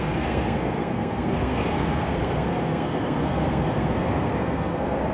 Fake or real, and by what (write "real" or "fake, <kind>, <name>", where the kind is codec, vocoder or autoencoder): fake, codec, SNAC